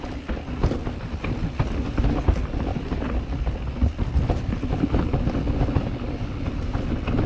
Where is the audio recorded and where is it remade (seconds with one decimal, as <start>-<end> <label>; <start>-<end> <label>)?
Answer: 0.0-7.3 recorded